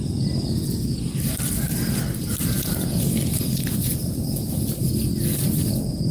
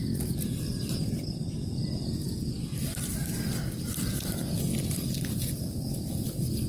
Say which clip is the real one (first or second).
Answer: first